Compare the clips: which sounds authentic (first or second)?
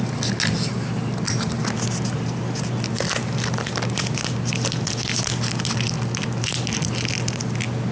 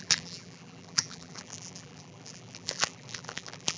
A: first